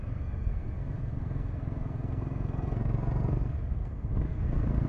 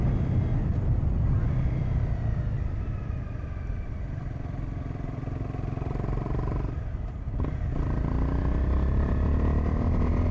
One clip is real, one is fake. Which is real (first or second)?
second